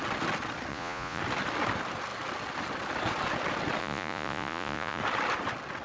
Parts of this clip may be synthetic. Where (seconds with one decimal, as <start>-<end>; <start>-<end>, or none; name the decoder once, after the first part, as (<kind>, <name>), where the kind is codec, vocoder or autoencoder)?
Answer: 0.7-1.2 (vocoder, Vocos); 3.8-5.0